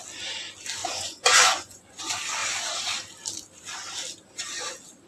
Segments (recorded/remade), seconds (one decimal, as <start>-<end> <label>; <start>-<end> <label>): 0.0-0.8 recorded; 0.8-2.0 remade; 2.0-5.1 recorded